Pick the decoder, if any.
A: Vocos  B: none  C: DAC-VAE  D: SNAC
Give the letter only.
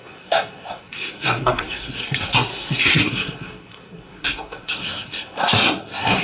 D